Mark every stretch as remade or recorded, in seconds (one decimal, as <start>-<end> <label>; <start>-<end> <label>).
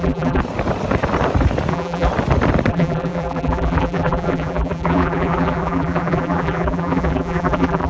0.0-0.4 remade; 0.4-1.7 recorded; 1.7-2.1 remade; 2.1-2.7 recorded; 2.7-7.9 remade